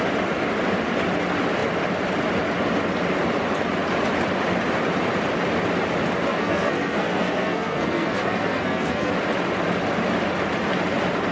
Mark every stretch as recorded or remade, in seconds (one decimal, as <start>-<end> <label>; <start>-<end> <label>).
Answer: 0.0-6.3 recorded; 6.3-9.1 remade; 9.1-11.3 recorded